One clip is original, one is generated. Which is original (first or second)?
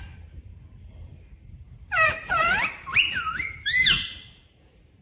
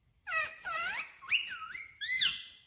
second